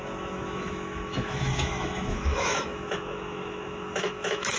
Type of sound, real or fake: fake